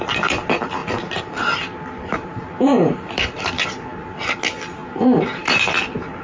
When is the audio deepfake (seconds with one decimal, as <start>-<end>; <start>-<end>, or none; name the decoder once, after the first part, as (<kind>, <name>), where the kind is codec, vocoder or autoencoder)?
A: 0.8-4.2 (vocoder, BigVGAN v2); 4.8-5.8